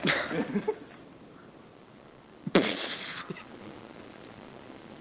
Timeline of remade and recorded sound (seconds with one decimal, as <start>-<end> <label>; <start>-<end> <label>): 0.0-1.7 recorded; 1.7-5.0 remade